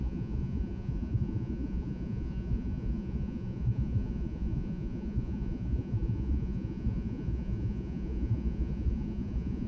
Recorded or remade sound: remade